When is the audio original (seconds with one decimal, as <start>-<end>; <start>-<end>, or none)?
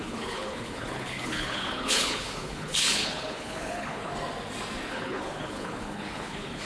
4.1-4.9